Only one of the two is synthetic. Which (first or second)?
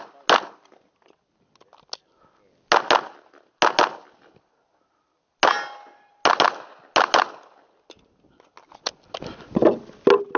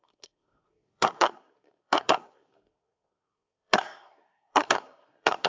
second